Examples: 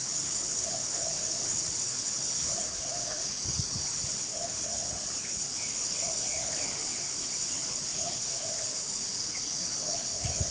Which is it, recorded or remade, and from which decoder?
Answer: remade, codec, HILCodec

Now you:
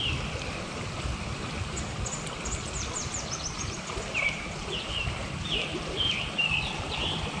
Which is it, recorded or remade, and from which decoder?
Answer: remade, vocoder, BigVGAN v2